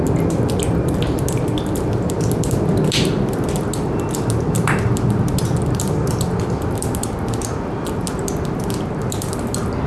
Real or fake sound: real